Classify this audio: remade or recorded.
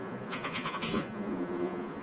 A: remade